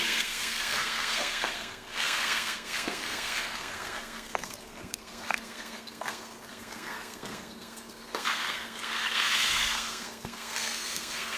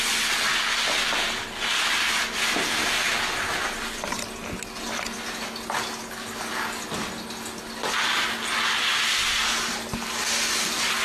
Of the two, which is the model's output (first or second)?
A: first